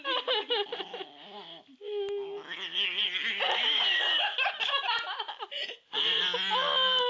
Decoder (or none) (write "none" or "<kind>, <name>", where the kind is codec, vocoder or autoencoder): none